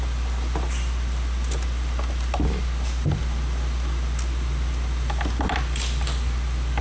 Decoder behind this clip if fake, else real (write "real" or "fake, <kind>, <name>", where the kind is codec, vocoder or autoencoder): real